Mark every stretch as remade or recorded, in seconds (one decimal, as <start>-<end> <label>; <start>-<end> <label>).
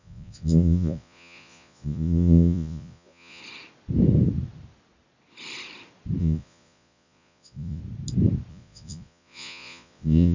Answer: 0.0-3.4 remade; 3.4-6.2 recorded; 6.2-7.8 remade; 7.8-8.5 recorded; 8.5-10.3 remade